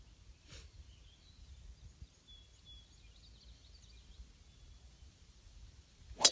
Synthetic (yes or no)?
no